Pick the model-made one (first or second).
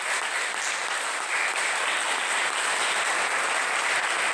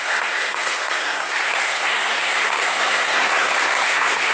second